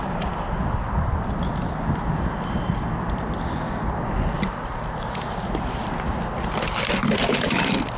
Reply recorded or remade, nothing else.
recorded